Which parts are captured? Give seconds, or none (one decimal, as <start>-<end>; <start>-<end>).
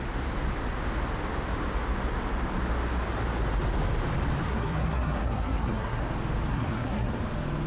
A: 0.0-4.4; 6.1-6.5; 7.2-7.7